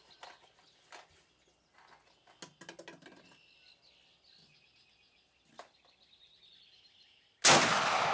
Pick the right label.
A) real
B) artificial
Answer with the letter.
A